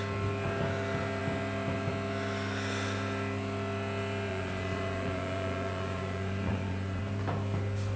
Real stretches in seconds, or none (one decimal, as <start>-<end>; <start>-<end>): 0.0-4.3; 7.0-8.0